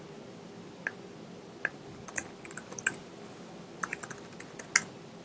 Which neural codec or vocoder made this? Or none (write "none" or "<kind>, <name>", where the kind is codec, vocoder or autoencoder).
none